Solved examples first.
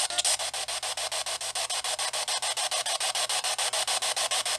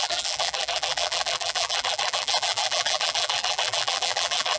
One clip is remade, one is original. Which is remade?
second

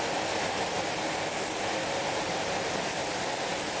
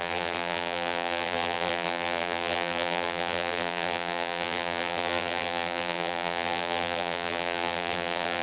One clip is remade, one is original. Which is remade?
second